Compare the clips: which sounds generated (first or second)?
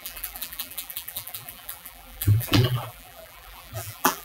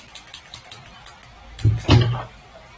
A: first